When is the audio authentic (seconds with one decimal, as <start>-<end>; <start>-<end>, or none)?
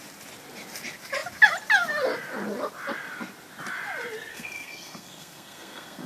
0.0-4.3